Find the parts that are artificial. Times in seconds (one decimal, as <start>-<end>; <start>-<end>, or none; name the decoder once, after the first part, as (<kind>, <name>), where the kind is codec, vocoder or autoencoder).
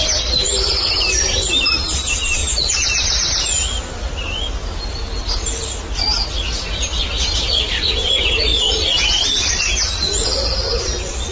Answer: none